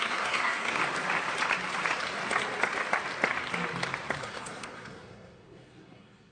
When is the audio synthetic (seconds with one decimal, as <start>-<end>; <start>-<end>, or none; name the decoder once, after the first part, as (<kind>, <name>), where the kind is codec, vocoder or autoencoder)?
0.0-0.8 (codec, SNAC); 4.2-6.3